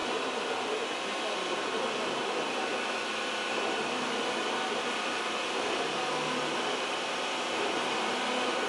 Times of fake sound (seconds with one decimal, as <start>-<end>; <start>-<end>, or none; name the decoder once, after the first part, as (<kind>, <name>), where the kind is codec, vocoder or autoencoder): none